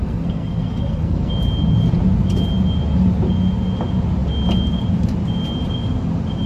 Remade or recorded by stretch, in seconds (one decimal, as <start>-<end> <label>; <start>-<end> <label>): 0.0-1.3 remade; 1.3-6.5 recorded